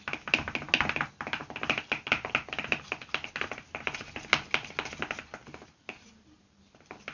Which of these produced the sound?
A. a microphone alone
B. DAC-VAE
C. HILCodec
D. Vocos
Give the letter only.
A